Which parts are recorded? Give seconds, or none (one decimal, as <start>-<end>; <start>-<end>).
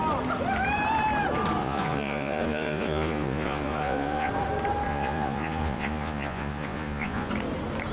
0.0-1.6; 4.3-4.9; 7.3-7.9